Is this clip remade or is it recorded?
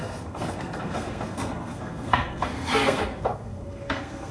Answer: remade